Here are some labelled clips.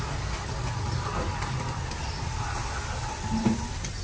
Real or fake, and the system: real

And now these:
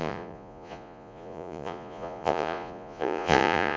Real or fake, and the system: fake, vocoder, Vocos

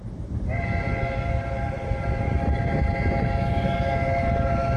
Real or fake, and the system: real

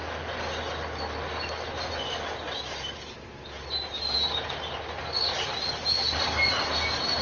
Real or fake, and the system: real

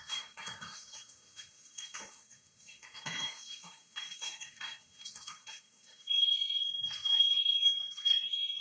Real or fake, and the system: fake, codec, SNAC